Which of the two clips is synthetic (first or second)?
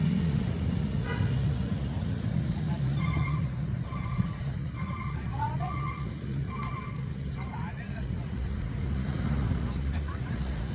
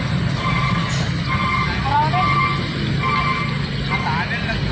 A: first